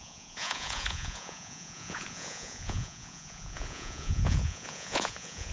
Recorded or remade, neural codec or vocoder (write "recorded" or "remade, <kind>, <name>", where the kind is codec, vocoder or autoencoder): remade, vocoder, Vocos